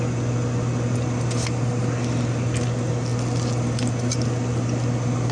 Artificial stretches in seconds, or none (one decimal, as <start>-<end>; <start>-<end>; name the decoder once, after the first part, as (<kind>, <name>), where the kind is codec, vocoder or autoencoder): none